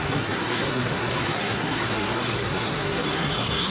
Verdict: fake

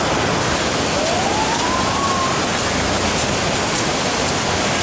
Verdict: real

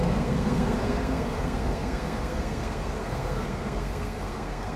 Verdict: fake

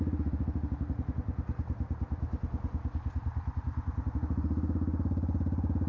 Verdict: real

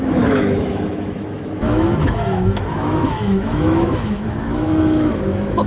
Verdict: fake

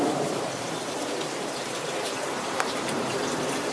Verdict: fake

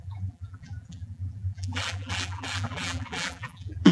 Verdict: fake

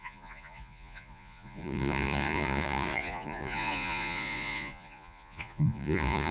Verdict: fake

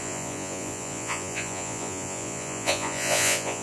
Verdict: fake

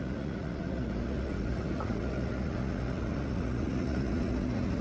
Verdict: fake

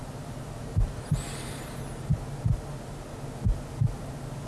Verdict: real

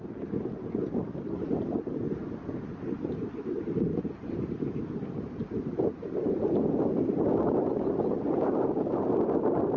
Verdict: real